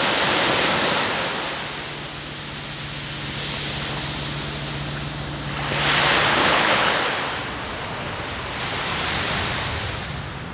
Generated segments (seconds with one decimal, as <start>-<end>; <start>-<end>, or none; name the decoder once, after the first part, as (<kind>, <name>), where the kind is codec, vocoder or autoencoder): 6.4-6.9 (codec, HILCodec)